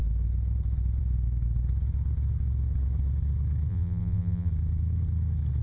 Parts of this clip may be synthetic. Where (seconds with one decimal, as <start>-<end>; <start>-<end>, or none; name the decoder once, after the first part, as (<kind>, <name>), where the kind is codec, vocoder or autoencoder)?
3.7-4.5 (vocoder, BigVGAN v2)